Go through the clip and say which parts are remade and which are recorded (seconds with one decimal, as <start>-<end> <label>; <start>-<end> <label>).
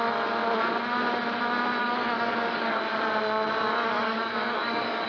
0.0-1.8 recorded; 1.8-2.8 remade; 2.8-3.6 recorded; 3.6-5.1 remade